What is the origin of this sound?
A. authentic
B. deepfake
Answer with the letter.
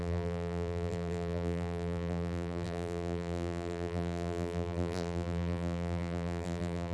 B